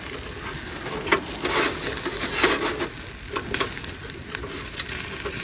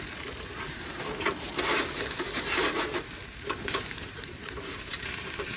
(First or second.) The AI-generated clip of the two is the second